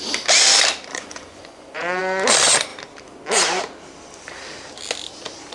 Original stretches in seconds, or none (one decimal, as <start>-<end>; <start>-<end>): 0.0-0.9; 2.0-5.5